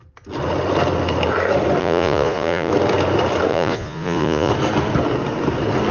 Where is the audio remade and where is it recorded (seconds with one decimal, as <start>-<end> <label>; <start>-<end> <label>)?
0.0-1.8 recorded; 1.8-2.7 remade; 2.7-3.5 recorded; 3.5-4.5 remade; 4.5-5.9 recorded